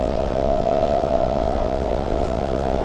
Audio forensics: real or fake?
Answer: fake